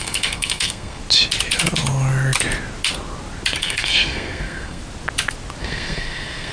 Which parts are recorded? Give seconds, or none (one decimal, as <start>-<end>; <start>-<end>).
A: 1.0-3.6; 4.8-5.6